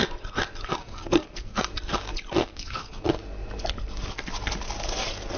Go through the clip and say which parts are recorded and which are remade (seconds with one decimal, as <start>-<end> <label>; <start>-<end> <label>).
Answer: 0.0-0.8 recorded; 0.8-1.6 remade; 1.6-2.4 recorded; 2.4-3.0 remade; 3.0-5.4 recorded